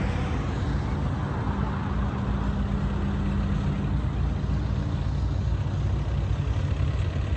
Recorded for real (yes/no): yes